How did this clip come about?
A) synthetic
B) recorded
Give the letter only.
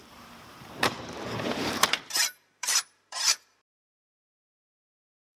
A